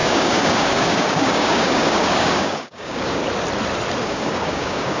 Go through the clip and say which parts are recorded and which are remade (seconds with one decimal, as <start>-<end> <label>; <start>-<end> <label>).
0.0-3.2 remade; 3.2-4.0 recorded; 4.0-5.0 remade